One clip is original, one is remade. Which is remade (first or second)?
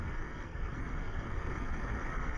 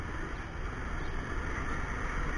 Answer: first